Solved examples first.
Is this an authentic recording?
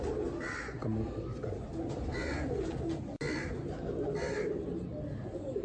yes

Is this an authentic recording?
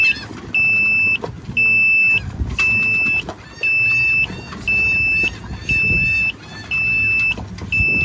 yes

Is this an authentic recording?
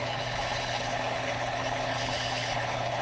no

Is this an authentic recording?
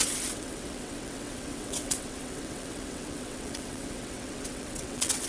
no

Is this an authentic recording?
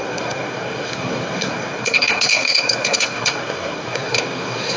no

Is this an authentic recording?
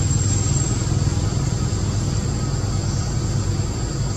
yes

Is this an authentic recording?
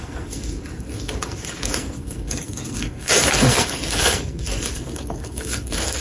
no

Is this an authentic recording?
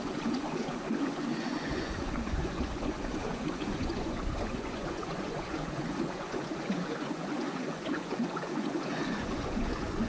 no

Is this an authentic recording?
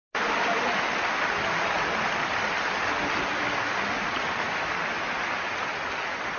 yes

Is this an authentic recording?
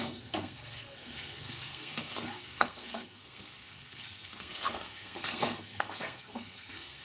no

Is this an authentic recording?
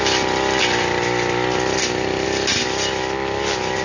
yes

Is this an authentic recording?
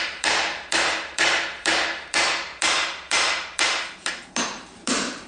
no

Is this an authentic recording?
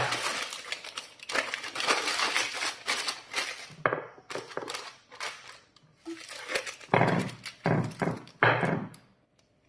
yes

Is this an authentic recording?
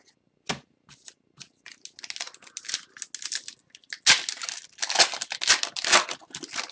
yes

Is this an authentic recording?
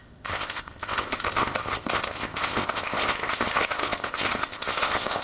no